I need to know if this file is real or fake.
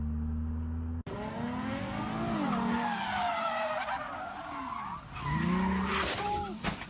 real